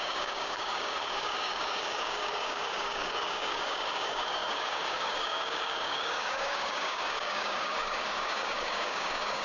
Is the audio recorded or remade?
remade